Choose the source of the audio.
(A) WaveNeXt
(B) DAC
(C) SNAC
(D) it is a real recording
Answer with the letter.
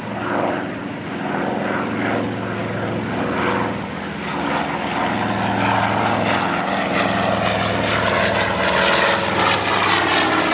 D